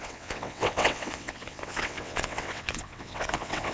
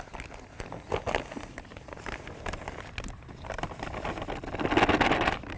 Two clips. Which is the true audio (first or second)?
second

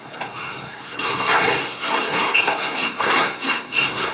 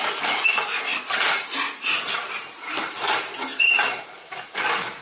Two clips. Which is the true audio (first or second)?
second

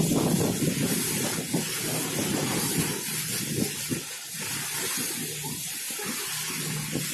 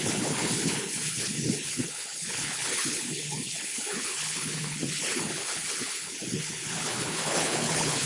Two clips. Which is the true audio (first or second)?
first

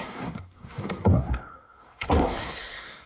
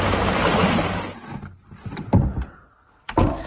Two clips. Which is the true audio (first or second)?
second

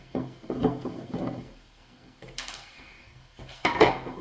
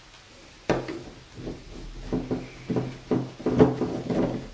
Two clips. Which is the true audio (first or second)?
second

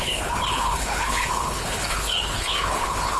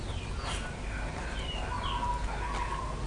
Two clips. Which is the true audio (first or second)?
second